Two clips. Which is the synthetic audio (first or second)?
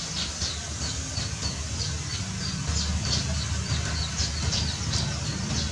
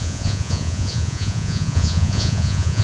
second